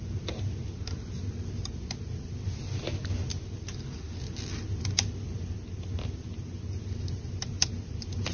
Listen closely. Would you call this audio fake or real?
real